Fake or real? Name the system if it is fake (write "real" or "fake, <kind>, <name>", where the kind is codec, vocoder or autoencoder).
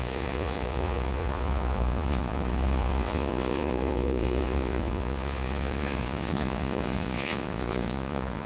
fake, vocoder, Vocos